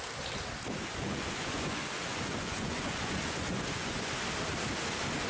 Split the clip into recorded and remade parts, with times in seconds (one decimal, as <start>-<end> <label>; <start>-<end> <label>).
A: 0.0-0.9 recorded; 0.9-4.1 remade; 4.1-5.3 recorded